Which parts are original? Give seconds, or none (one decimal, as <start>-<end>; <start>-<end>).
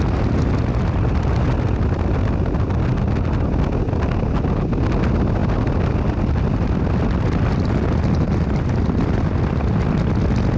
0.0-10.6